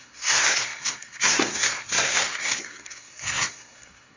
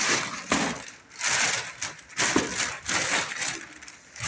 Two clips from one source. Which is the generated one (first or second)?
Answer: first